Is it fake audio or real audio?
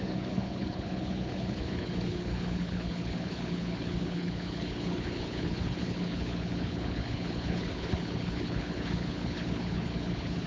fake